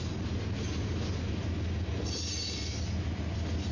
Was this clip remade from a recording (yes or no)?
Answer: no